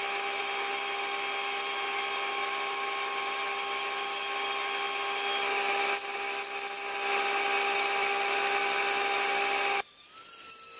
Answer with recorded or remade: recorded